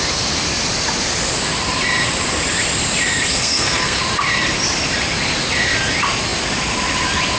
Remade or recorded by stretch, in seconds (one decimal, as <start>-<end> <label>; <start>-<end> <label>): 0.0-3.3 recorded; 3.3-4.0 remade; 4.0-7.4 recorded